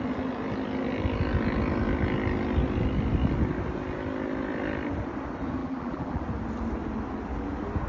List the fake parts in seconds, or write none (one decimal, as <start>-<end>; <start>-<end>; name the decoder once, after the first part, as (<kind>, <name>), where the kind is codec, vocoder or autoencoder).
5.6-6.2 (vocoder, BigVGAN v2)